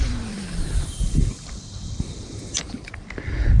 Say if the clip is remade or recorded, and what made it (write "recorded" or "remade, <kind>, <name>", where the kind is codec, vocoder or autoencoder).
recorded